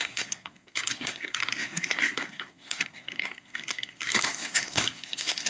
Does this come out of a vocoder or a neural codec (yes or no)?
yes